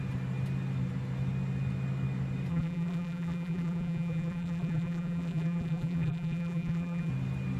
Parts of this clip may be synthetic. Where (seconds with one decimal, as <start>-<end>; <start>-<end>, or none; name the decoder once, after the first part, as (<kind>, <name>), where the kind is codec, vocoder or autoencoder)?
2.5-7.1 (vocoder, BigVGAN v2)